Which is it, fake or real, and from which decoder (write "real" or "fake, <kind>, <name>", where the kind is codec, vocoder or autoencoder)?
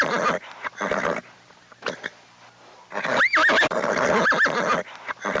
real